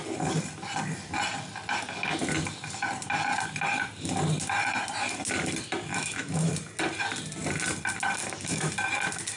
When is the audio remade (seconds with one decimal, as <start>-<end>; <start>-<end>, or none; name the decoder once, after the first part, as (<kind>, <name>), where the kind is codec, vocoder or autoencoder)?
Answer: 5.9-6.5 (autoencoder, DAC-VAE); 8.2-8.7